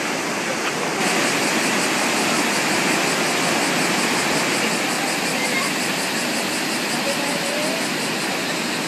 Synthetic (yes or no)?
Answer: no